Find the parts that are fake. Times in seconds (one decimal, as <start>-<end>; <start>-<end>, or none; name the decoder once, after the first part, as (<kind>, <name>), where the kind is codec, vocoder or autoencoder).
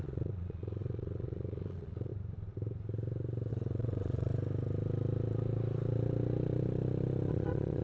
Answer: 0.0-2.1 (vocoder, Vocos); 3.5-4.3; 7.3-7.8